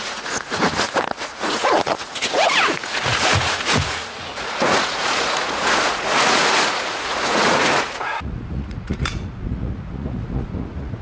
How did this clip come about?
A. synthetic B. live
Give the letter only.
A